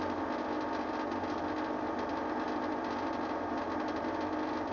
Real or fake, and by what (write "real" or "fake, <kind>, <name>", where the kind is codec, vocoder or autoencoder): real